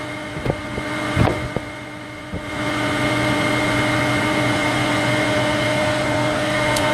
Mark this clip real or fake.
fake